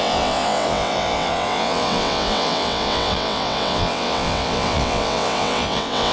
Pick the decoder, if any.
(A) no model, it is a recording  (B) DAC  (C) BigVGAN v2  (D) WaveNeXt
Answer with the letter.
D